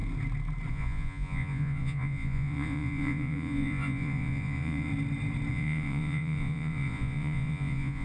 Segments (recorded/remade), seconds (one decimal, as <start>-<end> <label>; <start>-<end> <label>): 0.0-0.7 recorded; 0.7-4.9 remade; 4.9-5.5 recorded; 5.5-8.0 remade